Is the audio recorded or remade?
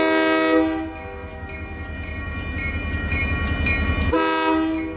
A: recorded